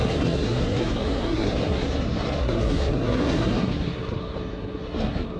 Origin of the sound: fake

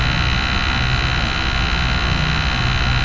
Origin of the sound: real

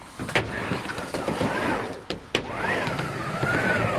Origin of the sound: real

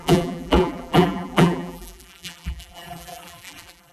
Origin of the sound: fake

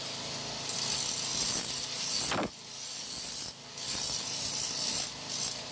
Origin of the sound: real